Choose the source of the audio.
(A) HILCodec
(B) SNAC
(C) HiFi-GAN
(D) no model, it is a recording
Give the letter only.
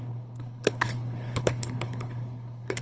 A